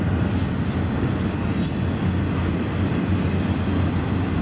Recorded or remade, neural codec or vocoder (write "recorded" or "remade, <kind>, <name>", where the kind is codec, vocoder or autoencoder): recorded